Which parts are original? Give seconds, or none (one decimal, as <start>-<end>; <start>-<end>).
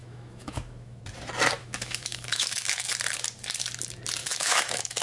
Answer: 1.0-1.6; 2.9-4.2